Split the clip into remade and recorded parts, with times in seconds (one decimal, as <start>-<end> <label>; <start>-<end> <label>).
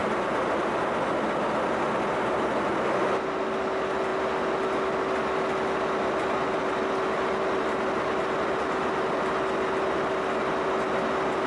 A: 0.0-11.5 recorded